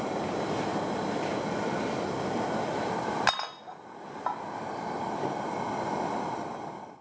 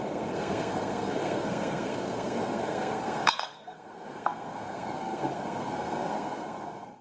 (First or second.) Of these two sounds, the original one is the first